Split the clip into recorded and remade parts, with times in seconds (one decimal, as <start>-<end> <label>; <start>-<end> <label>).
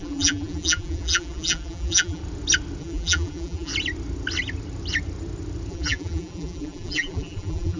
0.0-2.2 remade; 2.2-2.8 recorded; 2.8-3.7 remade; 3.7-5.7 recorded; 5.7-7.8 remade